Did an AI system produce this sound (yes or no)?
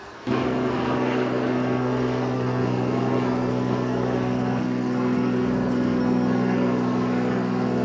yes